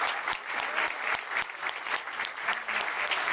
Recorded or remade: recorded